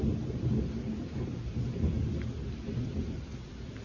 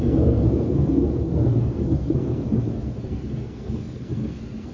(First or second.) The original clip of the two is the first